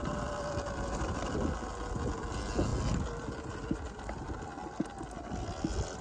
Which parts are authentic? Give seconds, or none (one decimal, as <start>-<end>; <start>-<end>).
0.0-6.0